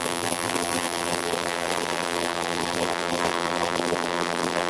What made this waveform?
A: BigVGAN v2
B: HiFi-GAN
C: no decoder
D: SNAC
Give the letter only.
A